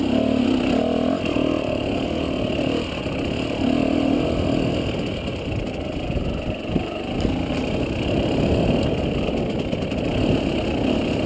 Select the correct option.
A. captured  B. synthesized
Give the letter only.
A